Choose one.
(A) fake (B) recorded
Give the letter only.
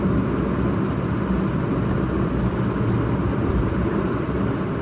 B